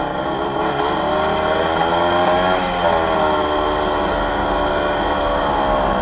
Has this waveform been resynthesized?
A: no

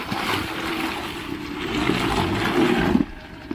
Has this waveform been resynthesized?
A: no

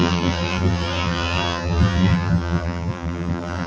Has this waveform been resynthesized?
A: yes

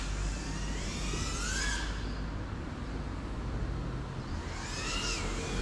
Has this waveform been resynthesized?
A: no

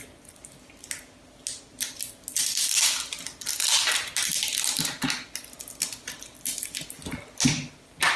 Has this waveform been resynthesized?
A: no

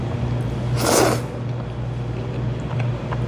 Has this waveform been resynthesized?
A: no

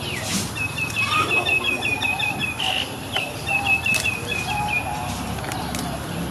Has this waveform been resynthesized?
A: yes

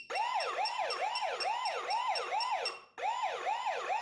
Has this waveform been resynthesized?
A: no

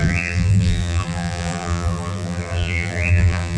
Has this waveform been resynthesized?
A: yes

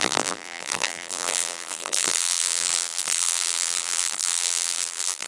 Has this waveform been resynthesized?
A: yes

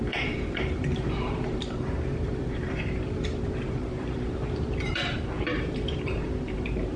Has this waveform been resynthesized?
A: yes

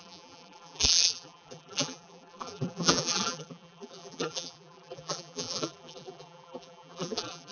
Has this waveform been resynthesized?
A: yes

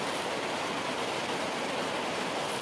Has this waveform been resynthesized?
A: no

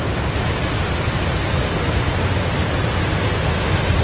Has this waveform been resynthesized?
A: no